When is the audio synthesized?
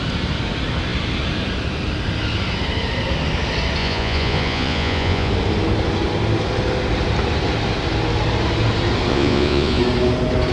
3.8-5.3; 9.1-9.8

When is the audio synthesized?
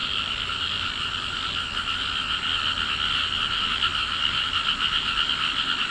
none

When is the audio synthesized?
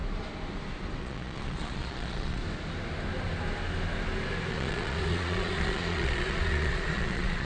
1.0-2.4; 4.5-7.5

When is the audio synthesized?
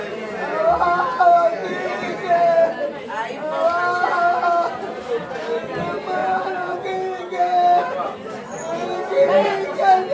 6.2-7.2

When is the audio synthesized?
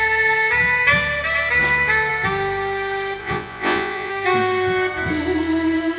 3.2-4.1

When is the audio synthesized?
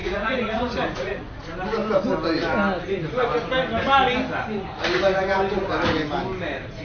0.0-1.3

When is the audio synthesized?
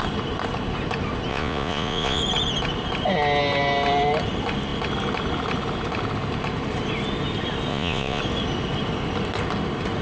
1.3-2.2; 7.7-8.2